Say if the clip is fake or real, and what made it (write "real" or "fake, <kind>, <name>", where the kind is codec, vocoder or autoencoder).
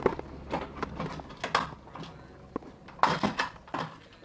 real